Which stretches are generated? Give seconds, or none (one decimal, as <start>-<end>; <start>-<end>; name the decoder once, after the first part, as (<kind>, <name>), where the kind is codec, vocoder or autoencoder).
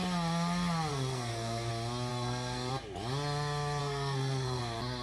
0.9-1.7 (codec, SNAC); 2.1-2.7; 3.8-4.6